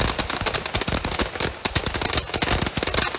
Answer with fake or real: real